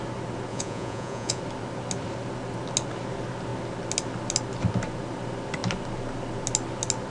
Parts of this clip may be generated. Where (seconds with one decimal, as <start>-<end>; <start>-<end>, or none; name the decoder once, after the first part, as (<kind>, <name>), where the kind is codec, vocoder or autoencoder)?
0.5-1.4 (vocoder, Vocos)